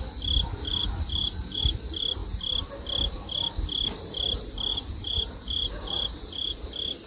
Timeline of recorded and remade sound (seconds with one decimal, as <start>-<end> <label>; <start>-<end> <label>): 0.0-0.8 recorded; 0.8-1.6 remade; 1.6-4.7 recorded; 4.7-6.6 remade; 6.6-7.1 recorded